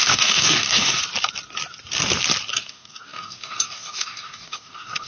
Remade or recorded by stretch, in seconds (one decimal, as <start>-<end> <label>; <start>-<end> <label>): 0.0-1.0 remade; 1.0-2.5 recorded; 2.5-5.1 remade